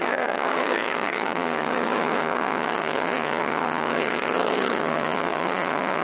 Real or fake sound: fake